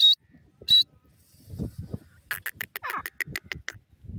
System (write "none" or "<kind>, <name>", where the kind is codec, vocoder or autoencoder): none